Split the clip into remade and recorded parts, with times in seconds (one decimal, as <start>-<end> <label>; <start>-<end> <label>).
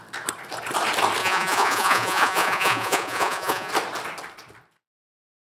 0.0-1.2 recorded; 1.2-3.7 remade; 3.7-5.5 recorded